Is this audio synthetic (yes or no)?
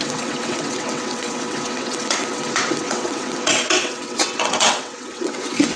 yes